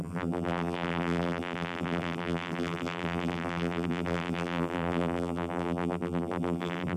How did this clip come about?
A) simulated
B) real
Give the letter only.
A